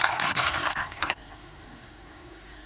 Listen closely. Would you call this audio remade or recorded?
remade